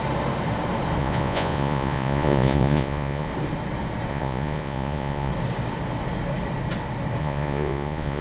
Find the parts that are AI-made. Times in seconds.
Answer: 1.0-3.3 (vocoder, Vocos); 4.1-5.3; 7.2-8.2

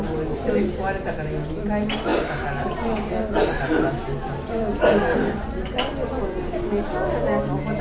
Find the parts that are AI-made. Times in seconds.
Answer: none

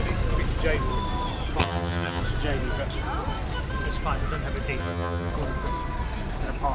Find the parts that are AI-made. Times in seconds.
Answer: 1.6-2.2 (vocoder, HiFi-GAN); 4.8-5.3

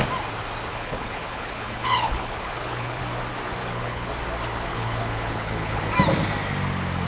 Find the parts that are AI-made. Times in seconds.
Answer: 0.7-3.0 (codec, HILCodec); 3.6-4.1; 4.7-5.8

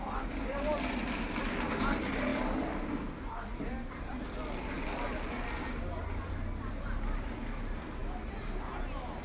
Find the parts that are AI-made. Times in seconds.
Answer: none

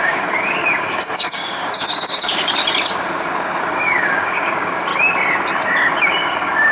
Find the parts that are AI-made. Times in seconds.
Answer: 0.0-2.6 (codec, DAC); 3.6-4.9; 5.8-6.7

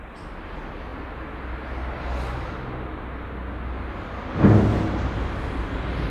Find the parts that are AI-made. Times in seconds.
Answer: none